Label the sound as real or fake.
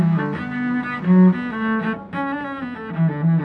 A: real